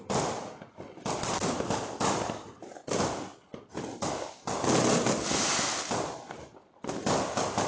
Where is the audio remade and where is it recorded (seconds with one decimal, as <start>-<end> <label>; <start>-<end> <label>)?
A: 0.0-7.7 recorded